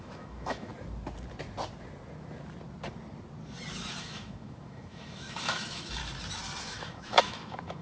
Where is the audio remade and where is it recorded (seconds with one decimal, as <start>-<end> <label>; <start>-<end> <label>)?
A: 0.0-0.7 remade; 0.7-4.0 recorded; 4.0-6.0 remade; 6.0-6.6 recorded; 6.6-7.8 remade